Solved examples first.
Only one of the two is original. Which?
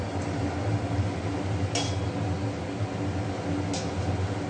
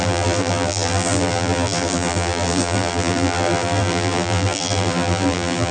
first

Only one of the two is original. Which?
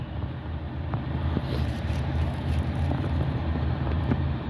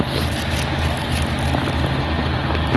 second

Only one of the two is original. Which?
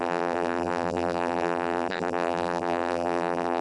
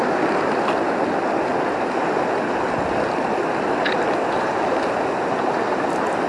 second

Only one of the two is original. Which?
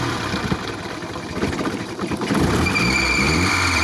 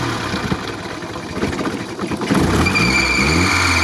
second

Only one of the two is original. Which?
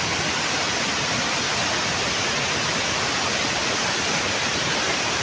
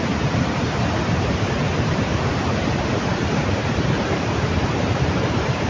first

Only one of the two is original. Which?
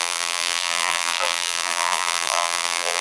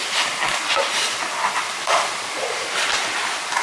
second